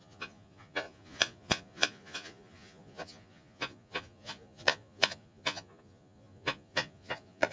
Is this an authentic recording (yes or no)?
no